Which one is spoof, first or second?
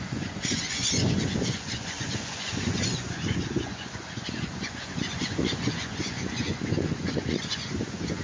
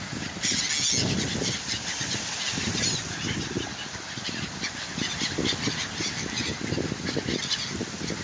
first